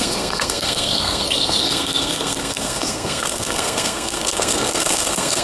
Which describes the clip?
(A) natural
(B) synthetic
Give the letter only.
B